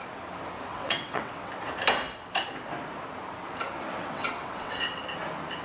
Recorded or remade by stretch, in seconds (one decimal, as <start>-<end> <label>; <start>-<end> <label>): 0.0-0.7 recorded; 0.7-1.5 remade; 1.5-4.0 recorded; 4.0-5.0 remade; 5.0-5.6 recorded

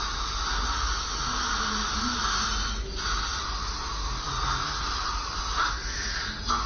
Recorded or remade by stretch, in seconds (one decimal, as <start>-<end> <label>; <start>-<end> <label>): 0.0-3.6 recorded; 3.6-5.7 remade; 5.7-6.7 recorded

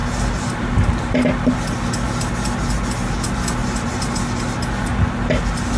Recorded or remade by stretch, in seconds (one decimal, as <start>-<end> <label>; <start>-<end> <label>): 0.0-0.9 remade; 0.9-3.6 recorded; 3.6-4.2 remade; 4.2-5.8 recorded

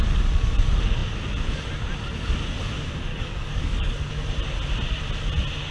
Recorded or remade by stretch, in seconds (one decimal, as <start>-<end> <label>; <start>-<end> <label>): 0.0-3.1 recorded; 3.1-4.1 remade; 4.1-5.7 recorded

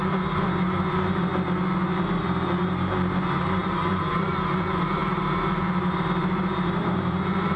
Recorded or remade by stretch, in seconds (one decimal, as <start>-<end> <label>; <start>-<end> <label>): 0.0-1.3 remade; 1.3-2.2 recorded; 2.2-7.6 remade

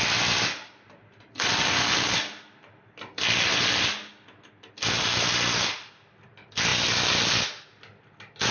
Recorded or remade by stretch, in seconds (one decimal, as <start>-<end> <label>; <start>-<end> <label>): 0.0-8.5 recorded